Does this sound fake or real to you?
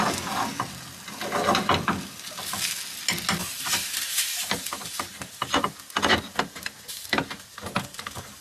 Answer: real